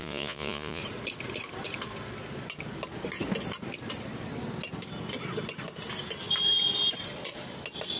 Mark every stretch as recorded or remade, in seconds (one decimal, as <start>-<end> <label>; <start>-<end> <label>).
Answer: 0.0-0.8 remade; 0.8-8.0 recorded